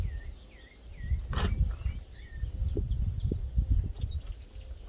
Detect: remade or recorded recorded